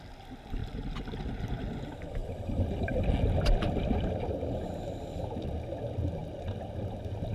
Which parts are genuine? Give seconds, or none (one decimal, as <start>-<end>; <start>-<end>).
0.0-2.2; 4.6-7.3

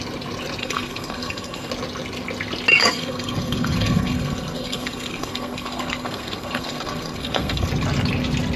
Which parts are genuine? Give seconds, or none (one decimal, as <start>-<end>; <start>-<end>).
0.0-0.6; 1.7-2.7; 7.7-8.6

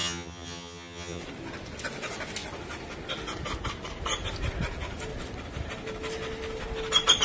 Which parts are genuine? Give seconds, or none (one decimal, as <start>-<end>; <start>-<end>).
1.2-7.2